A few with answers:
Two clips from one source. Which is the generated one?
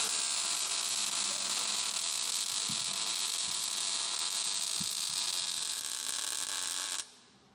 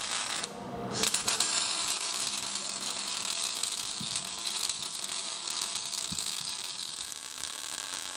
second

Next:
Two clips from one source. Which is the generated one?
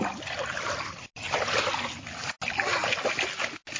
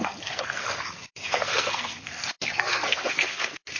second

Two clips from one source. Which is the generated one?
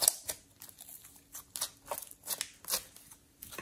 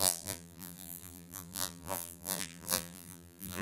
second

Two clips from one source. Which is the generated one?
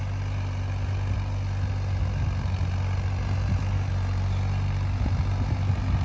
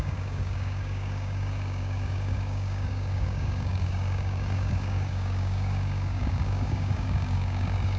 second